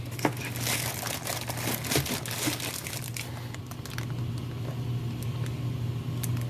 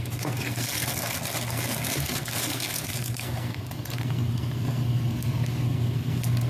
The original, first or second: first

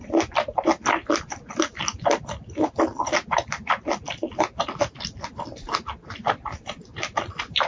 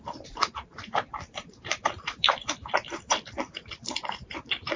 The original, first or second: first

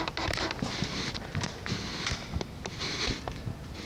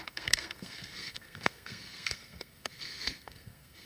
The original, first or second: first